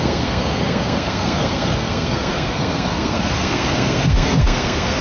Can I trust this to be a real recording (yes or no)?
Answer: no